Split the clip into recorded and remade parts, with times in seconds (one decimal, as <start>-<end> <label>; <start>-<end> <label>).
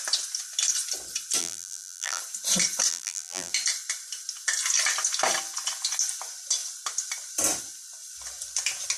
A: 0.0-1.4 recorded; 1.4-2.2 remade; 2.2-2.9 recorded; 2.9-3.5 remade; 3.5-9.0 recorded